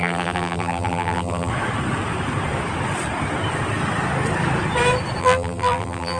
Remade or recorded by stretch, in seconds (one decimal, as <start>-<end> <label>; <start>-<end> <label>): 0.0-1.5 remade; 1.5-5.2 recorded; 5.2-6.2 remade